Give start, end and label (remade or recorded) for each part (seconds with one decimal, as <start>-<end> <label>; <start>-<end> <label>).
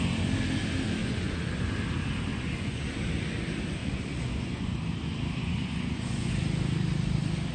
0.0-1.0 recorded; 1.0-1.7 remade; 1.7-2.3 recorded; 2.3-2.9 remade; 2.9-3.8 recorded; 3.8-4.8 remade; 4.8-5.4 recorded; 5.4-6.3 remade; 6.3-7.5 recorded